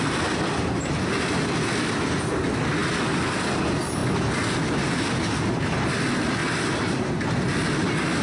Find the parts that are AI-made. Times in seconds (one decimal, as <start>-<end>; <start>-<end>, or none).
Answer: none